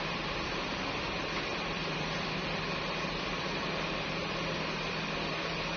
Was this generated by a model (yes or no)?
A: yes